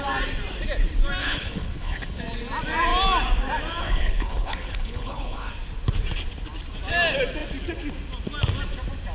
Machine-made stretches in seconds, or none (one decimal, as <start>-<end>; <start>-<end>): 1.2-2.2; 3.8-5.5